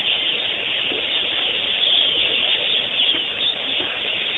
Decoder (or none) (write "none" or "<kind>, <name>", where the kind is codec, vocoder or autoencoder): none